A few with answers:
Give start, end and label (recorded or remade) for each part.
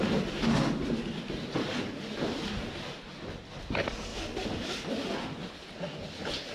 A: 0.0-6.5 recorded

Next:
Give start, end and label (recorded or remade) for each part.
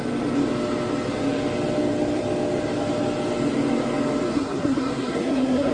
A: 0.0-4.3 recorded; 4.3-5.7 remade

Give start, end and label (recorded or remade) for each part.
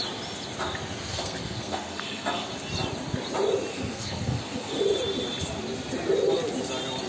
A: 0.0-1.1 recorded; 1.1-2.5 remade; 2.5-3.7 recorded; 3.7-4.8 remade; 4.8-7.1 recorded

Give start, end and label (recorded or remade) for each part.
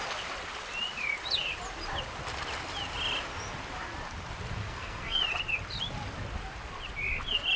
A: 0.0-4.6 recorded; 4.6-5.2 remade; 5.2-7.6 recorded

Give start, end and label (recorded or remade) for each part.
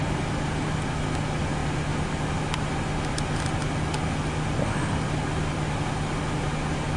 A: 0.0-7.0 recorded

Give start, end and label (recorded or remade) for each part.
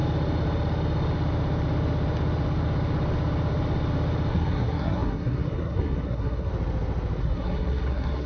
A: 0.0-4.3 recorded; 4.3-6.5 remade; 6.5-7.2 recorded; 7.2-8.3 remade